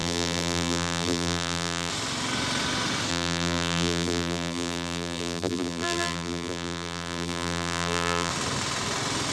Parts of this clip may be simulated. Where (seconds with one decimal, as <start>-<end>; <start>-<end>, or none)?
0.0-1.9; 3.1-8.3